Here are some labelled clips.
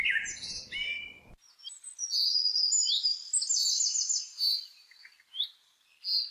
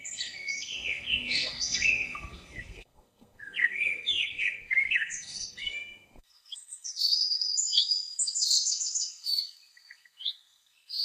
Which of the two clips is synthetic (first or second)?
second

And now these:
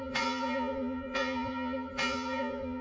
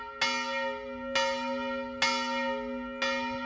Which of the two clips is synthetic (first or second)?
first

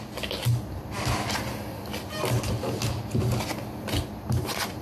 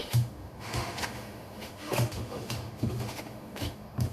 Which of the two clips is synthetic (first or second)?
second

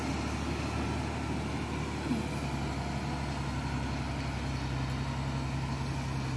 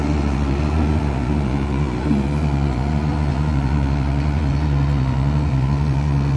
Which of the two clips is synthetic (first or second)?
second